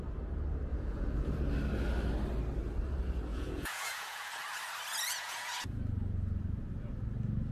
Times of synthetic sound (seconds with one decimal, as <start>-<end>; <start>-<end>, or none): 0.7-1.4; 3.3-4.3; 5.1-5.8